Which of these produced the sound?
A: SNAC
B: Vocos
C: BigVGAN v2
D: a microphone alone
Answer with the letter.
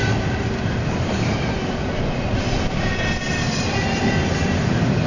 D